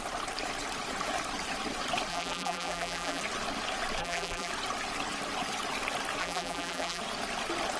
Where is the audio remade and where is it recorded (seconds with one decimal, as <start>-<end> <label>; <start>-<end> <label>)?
0.0-2.1 recorded; 2.1-3.2 remade; 3.2-4.0 recorded; 4.0-4.5 remade; 4.5-6.2 recorded; 6.2-7.0 remade; 7.0-7.8 recorded